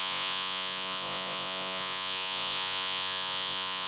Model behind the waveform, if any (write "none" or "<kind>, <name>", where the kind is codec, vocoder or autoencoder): vocoder, Vocos